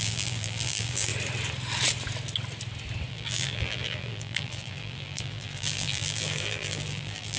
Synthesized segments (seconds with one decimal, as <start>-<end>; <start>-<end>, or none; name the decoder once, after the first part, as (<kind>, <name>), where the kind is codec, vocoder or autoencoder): 0.0-1.1 (vocoder, BigVGAN v2); 3.1-7.4